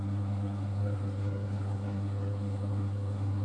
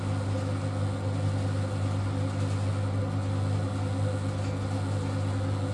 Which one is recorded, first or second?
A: second